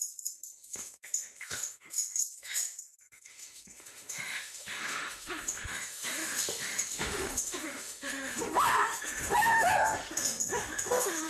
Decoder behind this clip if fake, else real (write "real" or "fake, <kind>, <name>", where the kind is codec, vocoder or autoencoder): fake, autoencoder, DAC-VAE